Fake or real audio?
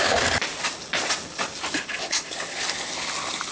real